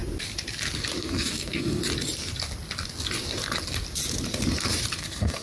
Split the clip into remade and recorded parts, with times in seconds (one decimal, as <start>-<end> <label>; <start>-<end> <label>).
0.0-1.0 recorded; 1.0-1.8 remade; 1.8-5.0 recorded; 5.0-5.4 remade